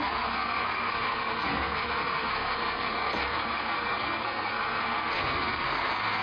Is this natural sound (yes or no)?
no